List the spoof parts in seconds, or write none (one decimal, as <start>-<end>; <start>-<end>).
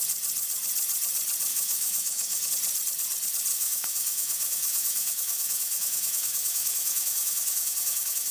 1.5-2.5; 3.5-8.3